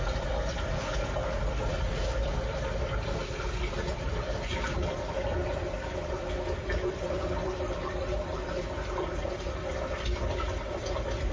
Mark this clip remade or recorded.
remade